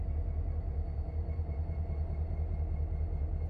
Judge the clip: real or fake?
fake